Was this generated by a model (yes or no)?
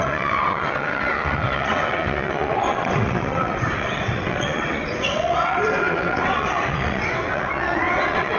yes